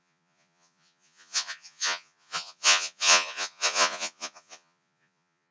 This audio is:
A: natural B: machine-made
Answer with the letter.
B